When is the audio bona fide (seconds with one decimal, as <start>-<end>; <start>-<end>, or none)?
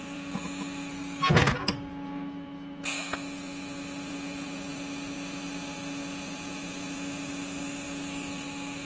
0.0-8.8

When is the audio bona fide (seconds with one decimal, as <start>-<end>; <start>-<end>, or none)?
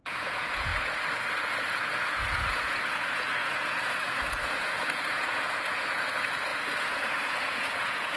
0.7-1.6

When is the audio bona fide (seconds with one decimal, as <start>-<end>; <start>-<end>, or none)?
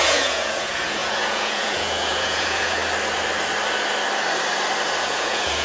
2.8-5.0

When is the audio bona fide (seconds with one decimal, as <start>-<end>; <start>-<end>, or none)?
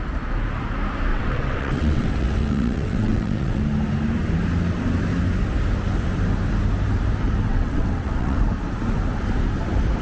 0.0-1.1; 3.6-7.5; 8.4-10.0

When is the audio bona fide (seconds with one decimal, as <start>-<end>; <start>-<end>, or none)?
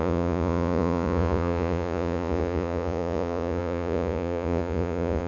none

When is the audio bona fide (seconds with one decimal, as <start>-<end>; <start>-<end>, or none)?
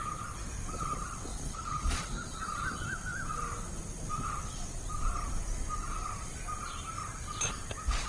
0.0-1.3; 2.4-8.1